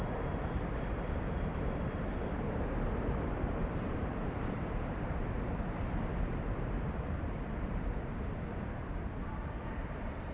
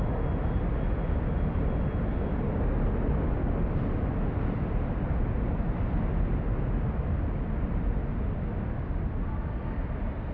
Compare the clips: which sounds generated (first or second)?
first